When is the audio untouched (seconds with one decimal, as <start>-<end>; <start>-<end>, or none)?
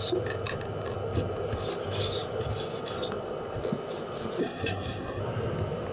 0.0-4.4; 5.2-5.9